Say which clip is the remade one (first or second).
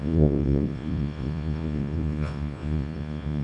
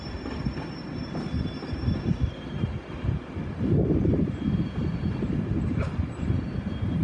first